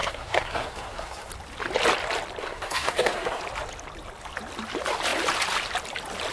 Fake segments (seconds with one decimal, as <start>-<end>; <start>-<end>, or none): 0.0-1.3; 2.4-3.4